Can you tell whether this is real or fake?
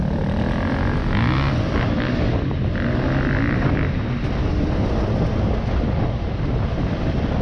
real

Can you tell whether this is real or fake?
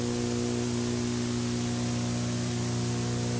real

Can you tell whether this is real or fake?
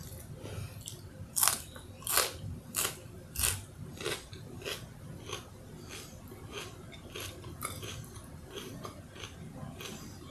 real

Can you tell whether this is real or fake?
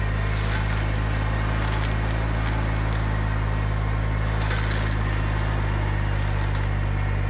real